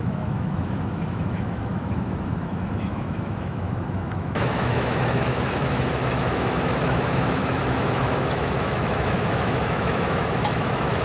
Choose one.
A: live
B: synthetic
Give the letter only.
B